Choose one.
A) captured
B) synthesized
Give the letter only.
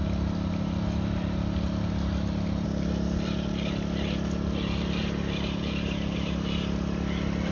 A